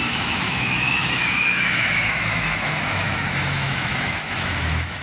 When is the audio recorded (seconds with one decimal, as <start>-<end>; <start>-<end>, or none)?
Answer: none